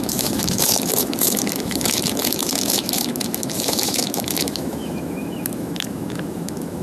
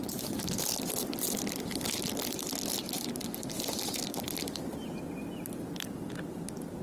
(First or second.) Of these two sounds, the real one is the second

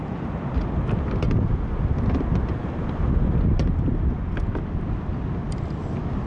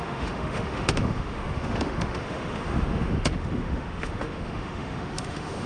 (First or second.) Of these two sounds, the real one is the first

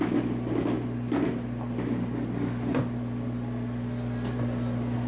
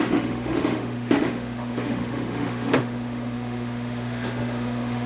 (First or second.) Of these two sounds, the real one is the first